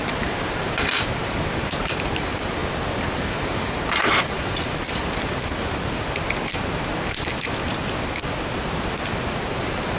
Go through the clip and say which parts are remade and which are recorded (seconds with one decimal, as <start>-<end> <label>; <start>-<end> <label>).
0.0-2.6 remade; 2.6-3.3 recorded; 3.3-5.0 remade; 5.0-9.6 recorded; 9.6-10.0 remade